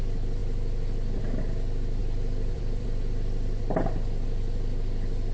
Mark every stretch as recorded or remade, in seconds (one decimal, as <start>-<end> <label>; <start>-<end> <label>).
0.0-2.0 recorded; 2.0-3.6 remade; 3.6-5.3 recorded